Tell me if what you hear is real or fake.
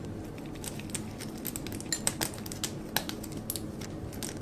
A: real